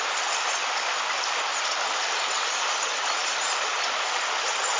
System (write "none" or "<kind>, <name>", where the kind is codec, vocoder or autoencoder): none